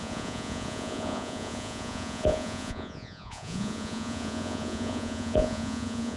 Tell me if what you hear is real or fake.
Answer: fake